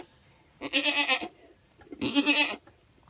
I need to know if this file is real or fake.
real